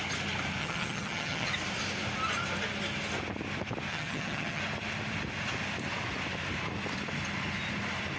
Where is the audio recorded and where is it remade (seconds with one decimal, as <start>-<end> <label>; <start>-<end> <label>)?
0.0-0.6 recorded; 0.6-1.5 remade; 1.5-3.9 recorded; 3.9-4.6 remade; 4.6-8.2 recorded